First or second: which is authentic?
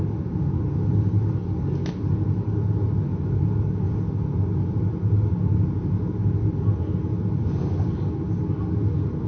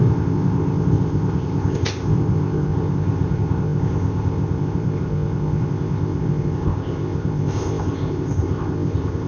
first